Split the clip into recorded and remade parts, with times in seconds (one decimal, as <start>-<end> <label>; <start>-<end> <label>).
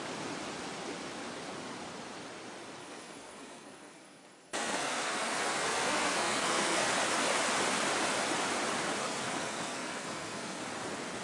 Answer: 0.0-2.8 recorded; 2.8-6.9 remade; 6.9-9.0 recorded; 9.0-10.6 remade; 10.6-11.2 recorded